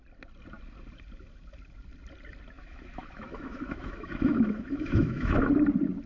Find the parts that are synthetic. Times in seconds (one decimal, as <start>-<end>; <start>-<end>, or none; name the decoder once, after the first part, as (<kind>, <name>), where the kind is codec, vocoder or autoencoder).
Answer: 2.6-5.5 (autoencoder, DAC-VAE)